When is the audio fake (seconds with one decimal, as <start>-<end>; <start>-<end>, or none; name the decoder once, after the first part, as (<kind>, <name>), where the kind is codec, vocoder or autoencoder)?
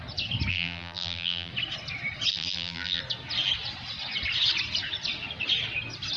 0.5-1.5 (vocoder, BigVGAN v2); 2.3-3.0